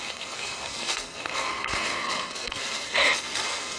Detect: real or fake fake